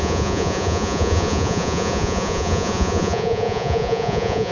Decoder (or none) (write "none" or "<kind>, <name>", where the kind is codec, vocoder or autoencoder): vocoder, Vocos